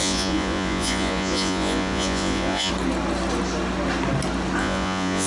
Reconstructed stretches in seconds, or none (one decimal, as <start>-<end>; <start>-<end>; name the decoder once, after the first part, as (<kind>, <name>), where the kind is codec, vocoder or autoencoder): 0.0-2.7 (vocoder, Vocos); 4.6-5.3

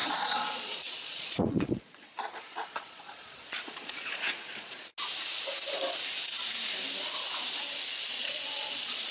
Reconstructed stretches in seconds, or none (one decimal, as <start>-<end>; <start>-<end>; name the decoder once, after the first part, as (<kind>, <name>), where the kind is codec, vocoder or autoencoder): 0.0-4.9 (vocoder, Vocos); 8.1-9.1

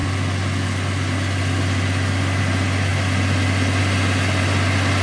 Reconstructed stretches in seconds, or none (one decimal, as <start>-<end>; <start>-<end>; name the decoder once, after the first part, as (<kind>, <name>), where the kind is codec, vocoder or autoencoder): none

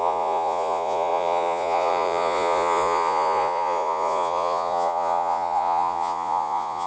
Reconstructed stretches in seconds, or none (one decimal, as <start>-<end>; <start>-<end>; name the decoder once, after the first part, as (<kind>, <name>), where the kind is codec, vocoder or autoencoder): 0.0-6.9 (vocoder, Vocos)